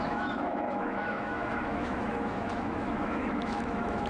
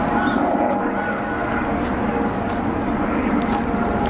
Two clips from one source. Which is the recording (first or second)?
second